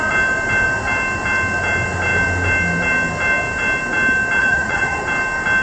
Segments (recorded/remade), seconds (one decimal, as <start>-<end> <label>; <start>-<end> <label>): 0.0-4.4 recorded; 4.4-5.0 remade; 5.0-5.6 recorded